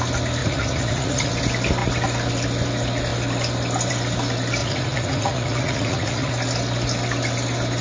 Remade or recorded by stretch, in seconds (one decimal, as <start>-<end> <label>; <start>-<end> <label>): 0.0-0.4 recorded; 0.4-1.3 remade; 1.3-4.6 recorded; 4.6-6.3 remade; 6.3-7.8 recorded